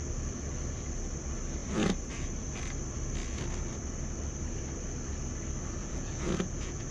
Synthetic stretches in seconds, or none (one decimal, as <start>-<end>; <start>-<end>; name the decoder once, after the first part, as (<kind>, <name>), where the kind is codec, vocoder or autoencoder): 5.8-6.9 (vocoder, Vocos)